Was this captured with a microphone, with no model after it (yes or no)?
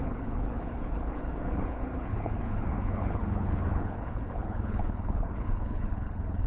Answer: no